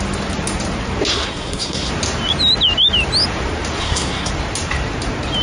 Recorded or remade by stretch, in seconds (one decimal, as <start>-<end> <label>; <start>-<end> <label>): 0.0-1.1 recorded; 1.1-1.9 remade; 1.9-3.8 recorded; 3.8-4.3 remade; 4.3-5.4 recorded